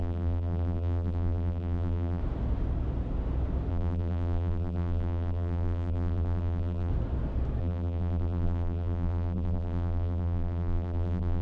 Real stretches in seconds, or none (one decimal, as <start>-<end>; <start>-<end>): 2.2-3.7; 6.9-7.6